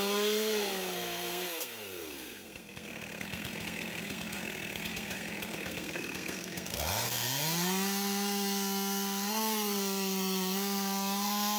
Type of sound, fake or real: fake